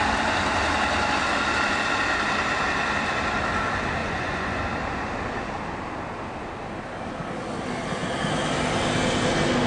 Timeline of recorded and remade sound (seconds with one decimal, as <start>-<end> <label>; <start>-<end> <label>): 0.0-4.0 recorded; 4.0-4.6 remade; 4.6-9.7 recorded